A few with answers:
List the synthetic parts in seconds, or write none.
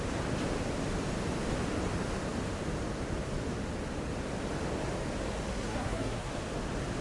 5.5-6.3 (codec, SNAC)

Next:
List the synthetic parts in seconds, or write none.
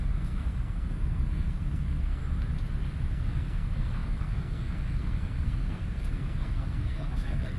0.0-2.2 (codec, SNAC); 3.1-7.6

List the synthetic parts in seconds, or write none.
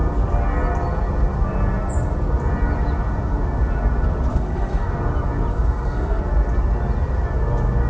4.3-4.9 (codec, SNAC); 5.5-6.2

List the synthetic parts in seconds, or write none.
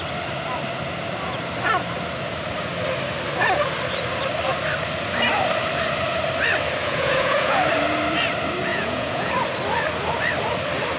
6.8-7.6 (vocoder, Vocos); 8.7-9.3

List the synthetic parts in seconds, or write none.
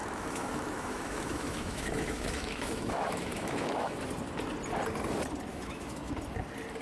0.0-4.1 (autoencoder, DAC-VAE); 5.5-6.1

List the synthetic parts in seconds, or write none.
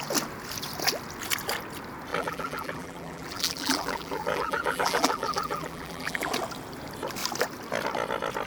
2.1-6.3 (vocoder, BigVGAN v2)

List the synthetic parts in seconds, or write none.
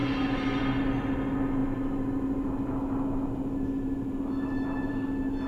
none